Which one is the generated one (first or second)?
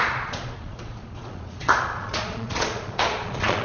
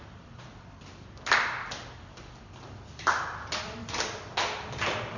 first